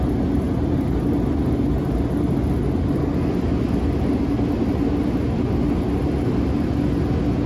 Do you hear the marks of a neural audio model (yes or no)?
no